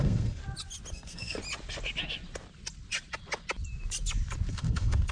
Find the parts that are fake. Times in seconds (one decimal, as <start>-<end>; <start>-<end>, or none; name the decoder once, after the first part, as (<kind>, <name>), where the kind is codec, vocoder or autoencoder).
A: 0.0-0.4 (codec, SNAC); 0.9-1.4; 4.5-5.1